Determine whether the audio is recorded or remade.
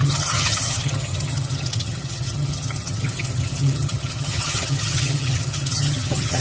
remade